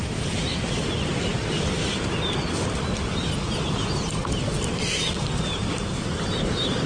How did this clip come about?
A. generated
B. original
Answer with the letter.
B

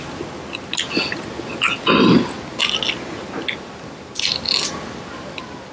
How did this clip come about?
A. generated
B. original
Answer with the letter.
B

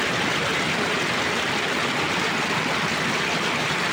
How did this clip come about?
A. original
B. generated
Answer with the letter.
A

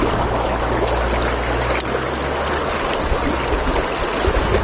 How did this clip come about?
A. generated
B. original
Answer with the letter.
B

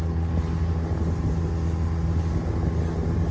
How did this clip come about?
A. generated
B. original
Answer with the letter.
B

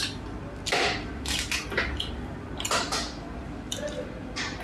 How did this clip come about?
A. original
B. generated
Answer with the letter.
A